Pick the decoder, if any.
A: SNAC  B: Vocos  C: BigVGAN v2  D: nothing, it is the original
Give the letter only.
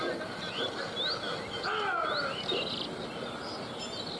D